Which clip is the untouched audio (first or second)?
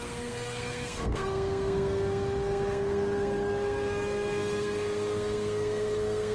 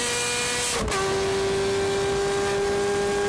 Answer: second